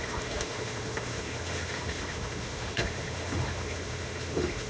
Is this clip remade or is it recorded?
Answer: remade